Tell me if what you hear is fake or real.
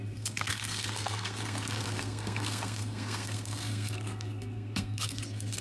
fake